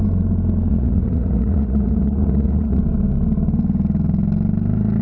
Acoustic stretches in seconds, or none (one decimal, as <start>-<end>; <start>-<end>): 0.0-0.7; 2.8-5.0